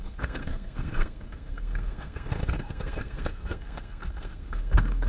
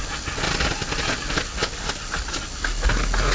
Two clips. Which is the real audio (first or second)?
second